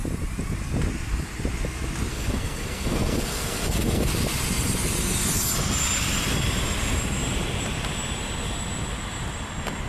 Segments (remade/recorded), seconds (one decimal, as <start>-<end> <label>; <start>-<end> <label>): 0.0-2.1 recorded; 2.1-4.1 remade; 4.1-9.9 recorded